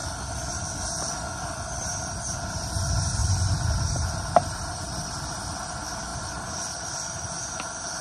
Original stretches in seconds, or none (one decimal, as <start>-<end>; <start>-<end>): 0.0-8.0